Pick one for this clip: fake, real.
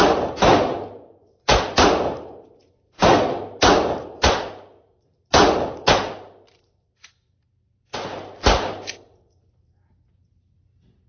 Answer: real